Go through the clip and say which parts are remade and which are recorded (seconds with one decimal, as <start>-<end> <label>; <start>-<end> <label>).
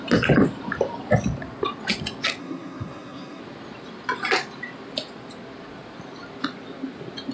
0.0-2.4 recorded; 2.4-3.4 remade; 3.4-7.3 recorded